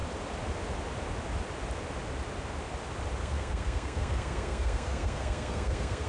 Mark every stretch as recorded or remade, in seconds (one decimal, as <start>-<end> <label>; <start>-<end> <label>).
0.0-3.2 recorded; 3.2-6.1 remade